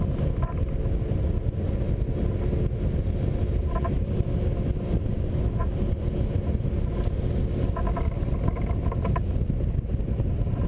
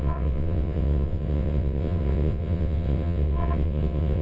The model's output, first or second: second